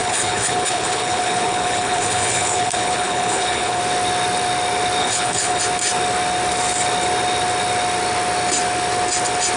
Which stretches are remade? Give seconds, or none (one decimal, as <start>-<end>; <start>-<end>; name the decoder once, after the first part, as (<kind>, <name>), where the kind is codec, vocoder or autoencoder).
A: 0.0-3.8 (codec, HILCodec); 5.0-5.6

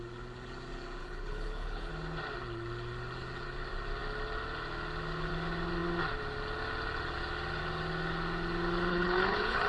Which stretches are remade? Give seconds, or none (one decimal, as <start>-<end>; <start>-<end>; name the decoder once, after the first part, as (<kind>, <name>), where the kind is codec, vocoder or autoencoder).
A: 1.0-1.9 (codec, HILCodec); 8.9-9.7